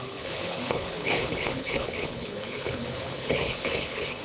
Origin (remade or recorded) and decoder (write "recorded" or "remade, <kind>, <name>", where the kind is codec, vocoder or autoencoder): remade, codec, HILCodec